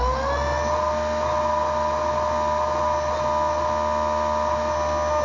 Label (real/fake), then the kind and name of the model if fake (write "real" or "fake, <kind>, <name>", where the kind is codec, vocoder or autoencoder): real